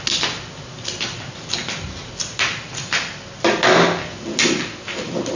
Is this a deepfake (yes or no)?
no